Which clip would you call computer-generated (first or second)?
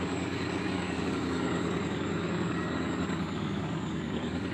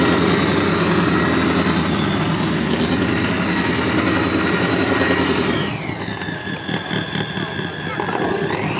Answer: first